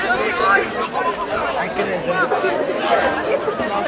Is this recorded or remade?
recorded